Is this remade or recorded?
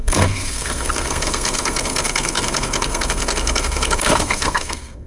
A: remade